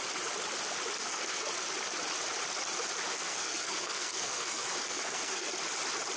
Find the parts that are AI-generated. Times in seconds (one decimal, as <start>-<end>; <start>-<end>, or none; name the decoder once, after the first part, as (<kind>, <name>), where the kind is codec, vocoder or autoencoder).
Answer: 1.0-1.5 (codec, SNAC); 3.1-5.5